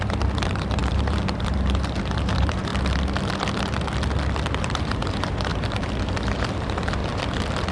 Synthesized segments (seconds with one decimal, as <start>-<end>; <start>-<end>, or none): 0.0-2.7; 4.6-7.0